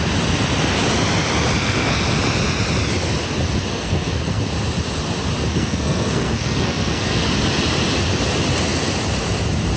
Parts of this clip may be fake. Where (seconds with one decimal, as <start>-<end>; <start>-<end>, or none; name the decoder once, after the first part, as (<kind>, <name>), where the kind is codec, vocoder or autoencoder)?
1.6-2.2 (codec, SNAC); 3.7-4.4; 5.5-7.3